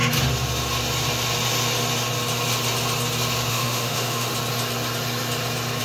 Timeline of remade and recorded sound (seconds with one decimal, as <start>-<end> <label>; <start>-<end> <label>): 0.0-3.5 recorded; 3.5-4.3 remade; 4.3-5.8 recorded